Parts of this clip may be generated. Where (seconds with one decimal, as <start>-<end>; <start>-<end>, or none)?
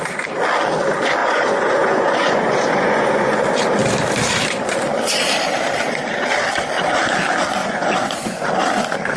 1.2-3.4; 7.6-8.5